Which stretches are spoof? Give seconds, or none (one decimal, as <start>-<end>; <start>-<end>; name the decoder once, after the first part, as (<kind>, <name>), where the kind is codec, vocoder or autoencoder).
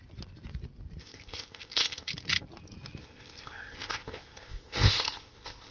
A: 1.0-2.1 (codec, ZipCodec); 3.0-5.7